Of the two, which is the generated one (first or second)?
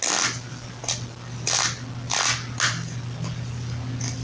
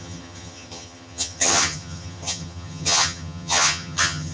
second